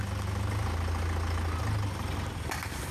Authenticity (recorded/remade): recorded